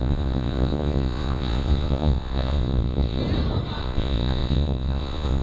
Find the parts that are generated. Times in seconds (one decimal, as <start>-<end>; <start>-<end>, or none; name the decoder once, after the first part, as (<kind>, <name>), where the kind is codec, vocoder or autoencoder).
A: 0.0-3.2 (vocoder, Vocos); 3.8-5.4